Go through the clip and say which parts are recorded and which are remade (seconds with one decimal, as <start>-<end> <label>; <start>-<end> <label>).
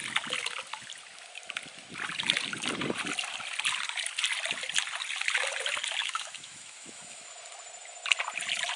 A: 0.0-6.0 recorded; 6.0-7.3 remade; 7.3-8.8 recorded